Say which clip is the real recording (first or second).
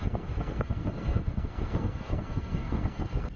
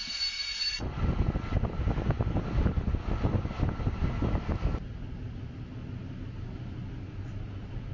second